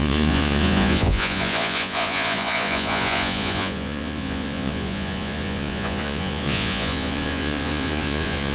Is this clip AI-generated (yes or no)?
yes